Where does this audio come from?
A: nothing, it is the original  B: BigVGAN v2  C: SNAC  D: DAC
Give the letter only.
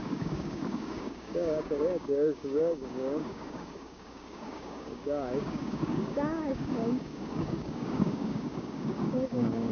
D